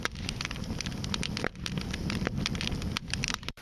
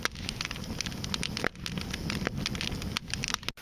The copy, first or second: first